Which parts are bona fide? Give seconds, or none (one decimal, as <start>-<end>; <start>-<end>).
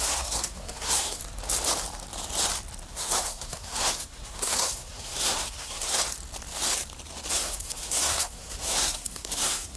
1.2-2.9; 6.0-7.3